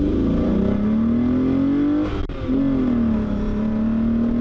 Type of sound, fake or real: real